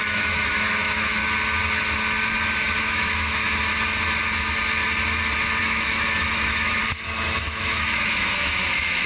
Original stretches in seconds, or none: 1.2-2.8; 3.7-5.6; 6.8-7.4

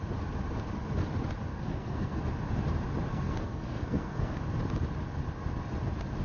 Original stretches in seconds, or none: 0.0-1.5; 2.2-3.1; 4.4-6.2

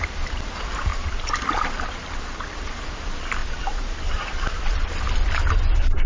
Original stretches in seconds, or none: 0.9-1.6; 3.4-4.7